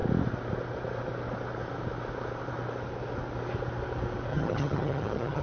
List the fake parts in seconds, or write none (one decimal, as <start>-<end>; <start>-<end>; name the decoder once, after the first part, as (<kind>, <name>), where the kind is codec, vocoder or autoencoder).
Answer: 4.3-5.4 (vocoder, HiFi-GAN)